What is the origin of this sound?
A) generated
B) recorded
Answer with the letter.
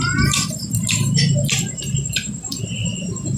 B